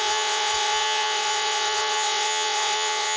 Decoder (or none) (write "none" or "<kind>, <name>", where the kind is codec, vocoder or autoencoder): vocoder, WaveNeXt